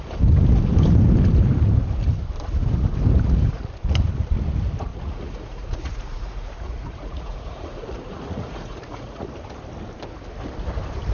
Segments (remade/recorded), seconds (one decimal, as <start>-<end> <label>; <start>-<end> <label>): 0.0-4.9 recorded; 4.9-9.3 remade; 9.3-11.1 recorded